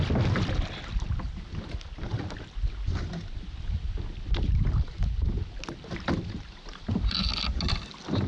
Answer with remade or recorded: recorded